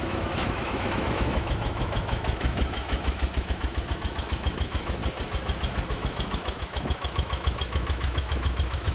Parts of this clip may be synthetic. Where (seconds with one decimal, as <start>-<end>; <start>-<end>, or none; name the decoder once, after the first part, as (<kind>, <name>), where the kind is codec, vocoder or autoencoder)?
0.0-5.0 (autoencoder, DAC-VAE); 5.9-8.9